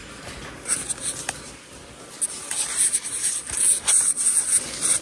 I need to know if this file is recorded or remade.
recorded